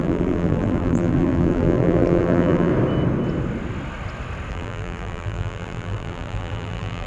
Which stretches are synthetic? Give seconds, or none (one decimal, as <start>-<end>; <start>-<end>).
0.0-2.7; 4.5-7.1